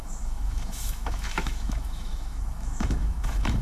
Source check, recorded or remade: remade